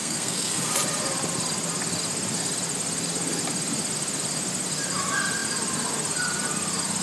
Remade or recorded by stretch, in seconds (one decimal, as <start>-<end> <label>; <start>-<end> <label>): 0.0-0.7 remade; 0.7-7.0 recorded